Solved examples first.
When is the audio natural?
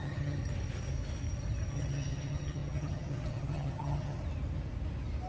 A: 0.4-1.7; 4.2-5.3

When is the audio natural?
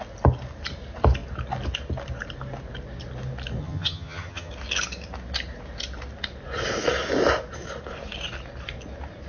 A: 0.0-3.6; 4.5-9.3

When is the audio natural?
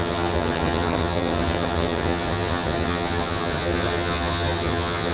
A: none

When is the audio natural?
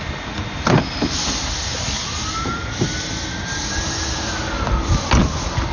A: 0.0-5.7